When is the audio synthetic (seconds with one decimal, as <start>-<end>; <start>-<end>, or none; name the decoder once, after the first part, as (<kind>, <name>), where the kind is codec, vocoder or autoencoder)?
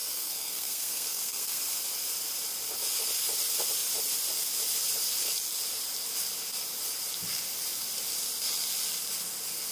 0.0-1.6 (codec, SNAC)